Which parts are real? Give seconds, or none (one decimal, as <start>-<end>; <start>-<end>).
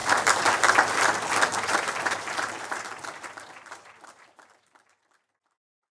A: 0.0-1.5; 5.0-5.9